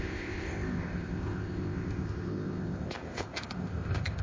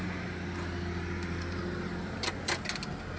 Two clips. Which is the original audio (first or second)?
second